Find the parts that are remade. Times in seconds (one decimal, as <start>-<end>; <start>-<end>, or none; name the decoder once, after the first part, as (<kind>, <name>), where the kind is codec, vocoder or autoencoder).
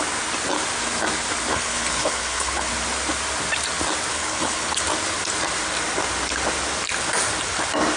1.5-2.7 (codec, HILCodec); 4.1-4.8